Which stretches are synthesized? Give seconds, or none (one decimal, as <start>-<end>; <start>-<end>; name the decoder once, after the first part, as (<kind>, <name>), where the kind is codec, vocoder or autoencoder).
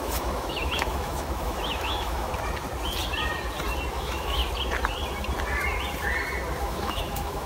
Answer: 0.0-2.3 (autoencoder, DAC-VAE); 3.9-4.4; 6.6-7.5